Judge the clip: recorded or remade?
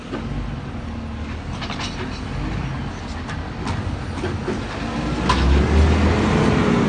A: recorded